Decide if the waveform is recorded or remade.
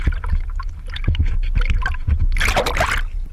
recorded